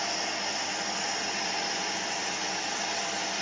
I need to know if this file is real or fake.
real